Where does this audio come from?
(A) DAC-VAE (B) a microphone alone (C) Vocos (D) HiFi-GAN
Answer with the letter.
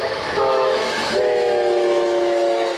A